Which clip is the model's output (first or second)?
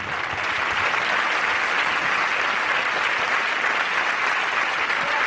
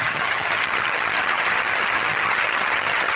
second